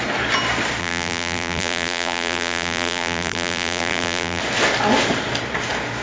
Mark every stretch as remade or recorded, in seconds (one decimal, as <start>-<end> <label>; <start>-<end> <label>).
0.0-0.8 recorded; 0.8-4.4 remade; 4.4-6.0 recorded